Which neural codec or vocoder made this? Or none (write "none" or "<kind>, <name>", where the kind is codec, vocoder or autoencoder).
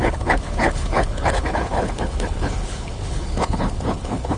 codec, HILCodec